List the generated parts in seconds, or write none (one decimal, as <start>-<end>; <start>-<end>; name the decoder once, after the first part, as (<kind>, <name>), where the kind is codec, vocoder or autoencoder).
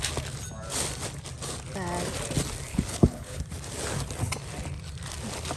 2.7-3.4 (codec, HILCodec)